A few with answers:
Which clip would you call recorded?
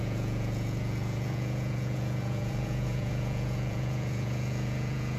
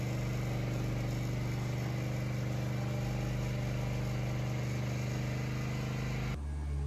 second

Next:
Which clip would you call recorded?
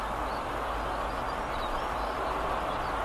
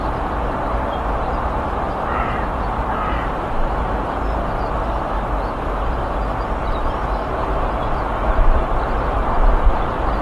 first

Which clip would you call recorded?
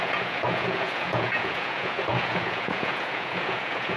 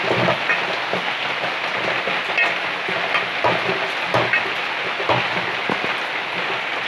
second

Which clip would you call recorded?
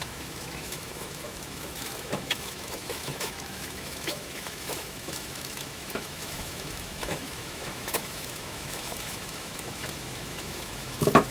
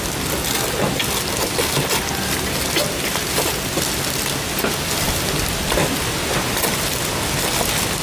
second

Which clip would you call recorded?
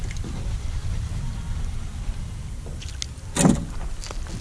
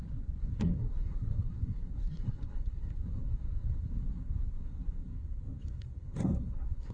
first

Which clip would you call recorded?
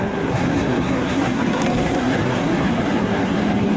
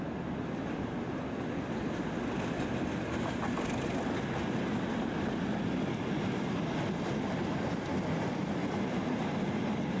second